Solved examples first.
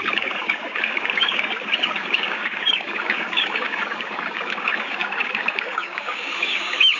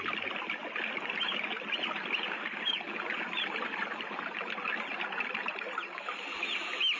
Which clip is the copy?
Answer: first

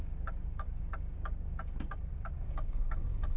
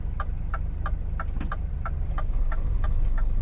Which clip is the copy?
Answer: first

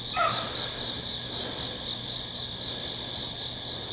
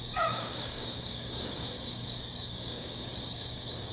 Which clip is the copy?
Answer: second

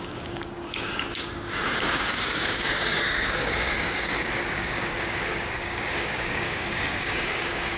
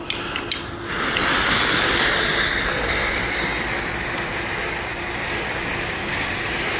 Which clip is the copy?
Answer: first